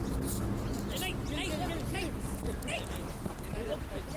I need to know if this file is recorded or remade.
recorded